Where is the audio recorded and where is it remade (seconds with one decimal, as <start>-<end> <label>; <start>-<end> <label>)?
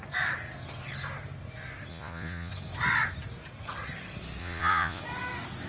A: 0.0-1.9 recorded; 1.9-2.5 remade; 2.5-4.4 recorded; 4.4-5.0 remade; 5.0-5.7 recorded